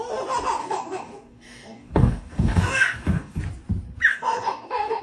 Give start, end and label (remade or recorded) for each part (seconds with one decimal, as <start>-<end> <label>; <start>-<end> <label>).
0.0-0.6 recorded; 0.6-3.4 remade; 3.4-4.1 recorded; 4.1-5.0 remade